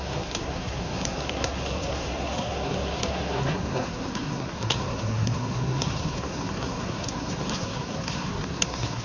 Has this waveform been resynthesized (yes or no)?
yes